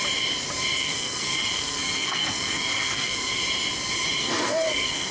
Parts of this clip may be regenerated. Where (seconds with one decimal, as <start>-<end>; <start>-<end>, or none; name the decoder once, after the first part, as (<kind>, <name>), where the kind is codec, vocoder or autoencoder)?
0.8-3.4 (codec, SNAC); 4.2-5.1